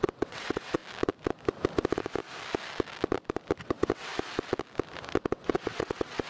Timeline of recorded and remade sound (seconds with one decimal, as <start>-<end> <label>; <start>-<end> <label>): 0.0-0.8 remade; 0.8-3.6 recorded; 3.6-4.1 remade; 4.1-5.2 recorded; 5.2-6.3 remade